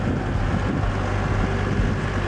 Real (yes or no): yes